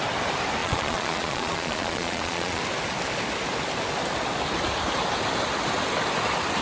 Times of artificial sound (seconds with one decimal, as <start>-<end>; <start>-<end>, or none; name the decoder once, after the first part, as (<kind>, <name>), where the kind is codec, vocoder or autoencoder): 0.6-2.6 (vocoder, Vocos)